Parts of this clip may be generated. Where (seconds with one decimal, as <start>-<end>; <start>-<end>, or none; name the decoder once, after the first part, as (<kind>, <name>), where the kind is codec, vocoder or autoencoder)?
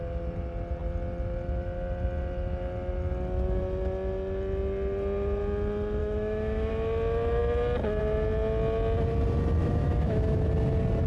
6.0-6.7 (autoencoder, DAC-VAE); 9.6-10.5